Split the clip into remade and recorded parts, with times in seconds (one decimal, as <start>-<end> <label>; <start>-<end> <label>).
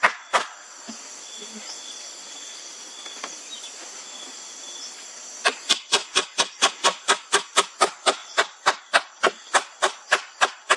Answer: 0.0-8.2 recorded; 8.2-8.8 remade; 8.8-10.8 recorded